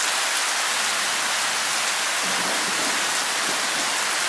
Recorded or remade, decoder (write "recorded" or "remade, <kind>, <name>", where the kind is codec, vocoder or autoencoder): recorded